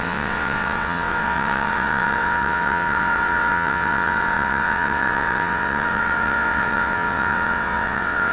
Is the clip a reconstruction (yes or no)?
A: yes